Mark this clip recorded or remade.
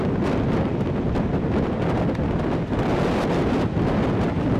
recorded